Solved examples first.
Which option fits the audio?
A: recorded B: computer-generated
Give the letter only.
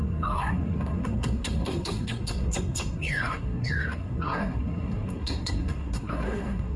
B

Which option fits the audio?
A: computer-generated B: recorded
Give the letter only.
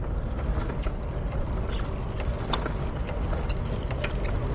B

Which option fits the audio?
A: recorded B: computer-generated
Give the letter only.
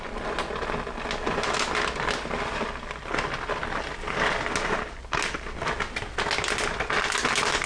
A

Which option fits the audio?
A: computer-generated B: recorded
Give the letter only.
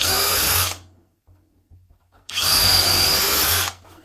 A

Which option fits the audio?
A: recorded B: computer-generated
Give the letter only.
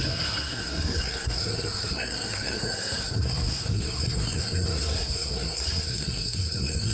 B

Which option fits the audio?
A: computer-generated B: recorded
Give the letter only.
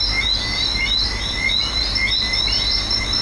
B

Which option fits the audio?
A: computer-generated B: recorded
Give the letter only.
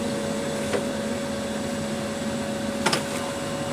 B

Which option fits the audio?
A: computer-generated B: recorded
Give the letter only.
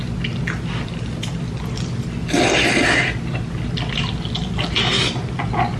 B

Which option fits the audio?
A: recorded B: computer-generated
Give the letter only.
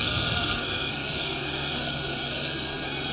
B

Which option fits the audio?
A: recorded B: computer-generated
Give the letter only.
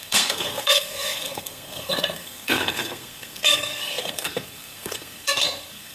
B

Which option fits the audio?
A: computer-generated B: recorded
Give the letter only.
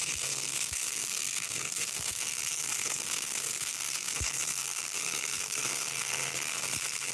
A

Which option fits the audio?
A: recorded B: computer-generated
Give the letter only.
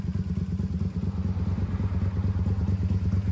A